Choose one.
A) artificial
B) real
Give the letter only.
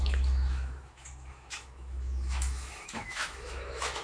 A